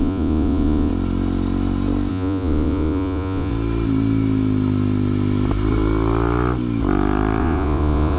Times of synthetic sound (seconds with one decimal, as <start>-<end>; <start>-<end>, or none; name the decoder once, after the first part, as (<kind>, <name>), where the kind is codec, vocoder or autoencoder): 0.0-0.9 (vocoder, Vocos); 2.1-3.5; 7.4-8.2